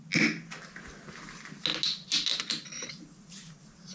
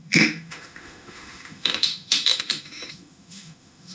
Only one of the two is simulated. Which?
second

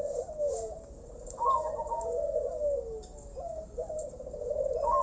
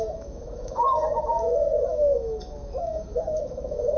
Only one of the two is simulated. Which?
second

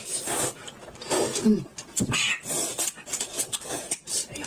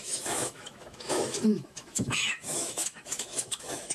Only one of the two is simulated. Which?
second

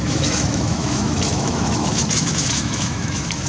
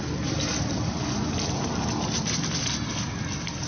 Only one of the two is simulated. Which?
first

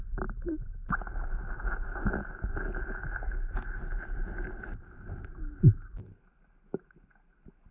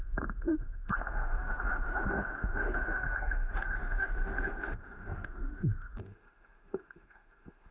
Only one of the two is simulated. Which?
second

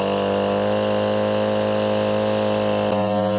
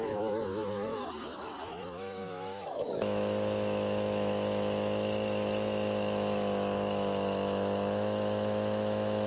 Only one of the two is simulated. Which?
second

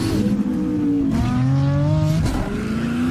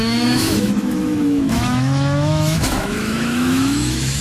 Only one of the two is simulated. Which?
second